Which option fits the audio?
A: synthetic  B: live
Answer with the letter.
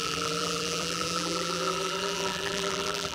A